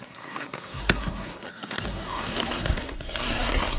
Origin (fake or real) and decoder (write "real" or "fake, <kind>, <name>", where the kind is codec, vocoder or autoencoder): fake, codec, SNAC